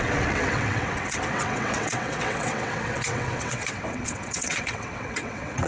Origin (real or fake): fake